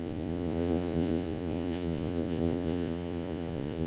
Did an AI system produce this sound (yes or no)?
yes